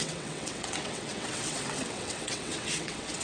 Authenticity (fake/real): fake